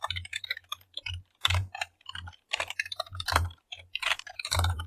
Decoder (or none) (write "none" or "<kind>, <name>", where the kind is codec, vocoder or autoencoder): vocoder, BigVGAN v2